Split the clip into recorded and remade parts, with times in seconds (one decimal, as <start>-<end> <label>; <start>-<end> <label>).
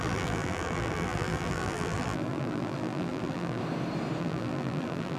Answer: 0.0-3.6 remade; 3.6-4.2 recorded; 4.2-5.2 remade